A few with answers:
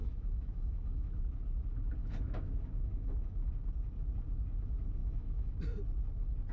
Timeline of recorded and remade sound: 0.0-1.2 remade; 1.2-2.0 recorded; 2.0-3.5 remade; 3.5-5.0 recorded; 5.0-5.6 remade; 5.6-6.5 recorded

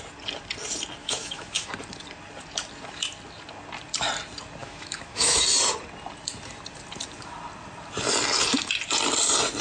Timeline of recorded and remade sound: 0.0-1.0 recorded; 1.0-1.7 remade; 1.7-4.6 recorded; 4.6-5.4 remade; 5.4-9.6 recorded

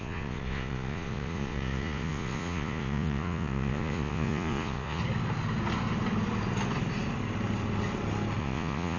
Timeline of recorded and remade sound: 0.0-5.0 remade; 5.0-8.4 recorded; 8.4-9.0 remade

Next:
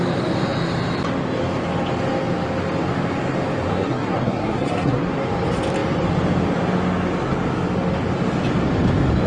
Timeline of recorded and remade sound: 0.0-3.7 recorded; 3.7-5.1 remade; 5.1-9.3 recorded

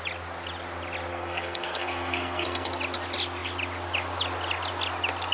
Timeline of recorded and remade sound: 0.0-1.1 recorded; 1.1-2.7 remade; 2.7-5.3 recorded